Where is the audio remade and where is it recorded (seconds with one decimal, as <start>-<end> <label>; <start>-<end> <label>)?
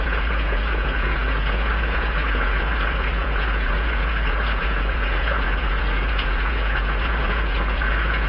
0.0-8.3 remade